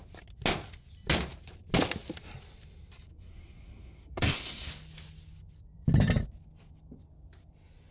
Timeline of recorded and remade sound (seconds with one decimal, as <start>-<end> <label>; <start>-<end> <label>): 0.0-3.1 recorded; 3.1-4.7 remade; 4.7-7.9 recorded